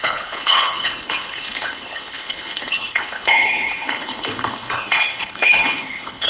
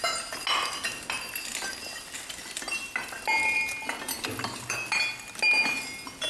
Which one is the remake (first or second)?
first